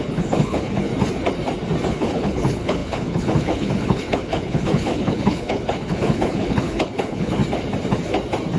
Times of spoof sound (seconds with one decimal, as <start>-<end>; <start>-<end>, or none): 0.0-0.9; 1.9-7.4